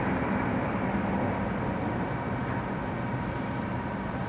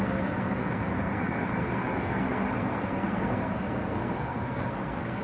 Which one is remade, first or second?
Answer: second